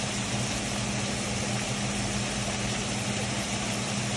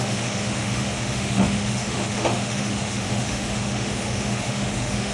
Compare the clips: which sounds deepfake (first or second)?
second